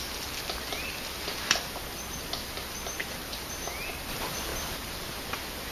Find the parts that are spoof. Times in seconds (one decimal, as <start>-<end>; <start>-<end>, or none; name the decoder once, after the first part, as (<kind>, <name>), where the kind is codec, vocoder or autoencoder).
3.2-3.9 (vocoder, BigVGAN v2); 4.5-5.2

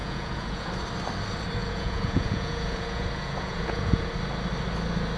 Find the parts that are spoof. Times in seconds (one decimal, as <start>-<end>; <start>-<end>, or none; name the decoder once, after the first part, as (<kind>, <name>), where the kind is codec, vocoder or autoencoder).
0.0-0.7 (vocoder, Vocos); 1.6-4.1

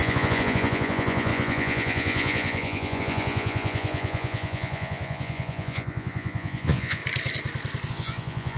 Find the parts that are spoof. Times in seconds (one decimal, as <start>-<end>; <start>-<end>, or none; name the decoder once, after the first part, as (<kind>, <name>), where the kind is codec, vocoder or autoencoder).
0.0-7.0 (vocoder, Vocos); 7.9-8.6

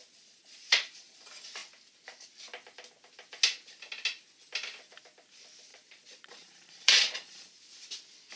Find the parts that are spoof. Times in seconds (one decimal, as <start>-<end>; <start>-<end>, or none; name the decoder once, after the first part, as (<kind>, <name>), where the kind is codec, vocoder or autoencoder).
0.0-1.2 (vocoder, Vocos); 5.7-7.5

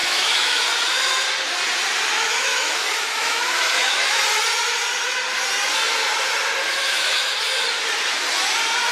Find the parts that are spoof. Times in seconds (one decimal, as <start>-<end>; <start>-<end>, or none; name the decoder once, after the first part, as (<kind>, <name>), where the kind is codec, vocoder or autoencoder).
0.0-0.6 (autoencoder, DAC-VAE); 2.1-4.2; 6.8-7.3

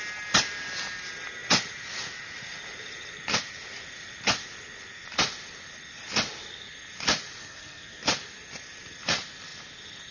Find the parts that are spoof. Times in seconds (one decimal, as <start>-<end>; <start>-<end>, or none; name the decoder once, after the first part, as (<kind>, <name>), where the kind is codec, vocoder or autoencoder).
7.4-8.0 (codec, SNAC)

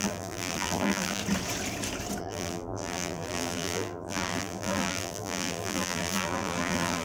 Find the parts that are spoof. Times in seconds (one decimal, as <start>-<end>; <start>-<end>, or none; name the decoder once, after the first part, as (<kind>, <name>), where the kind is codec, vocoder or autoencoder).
0.0-1.2 (vocoder, BigVGAN v2); 2.2-7.0